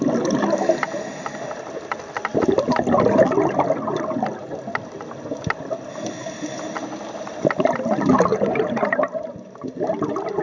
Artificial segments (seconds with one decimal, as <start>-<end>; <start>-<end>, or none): 8.3-9.3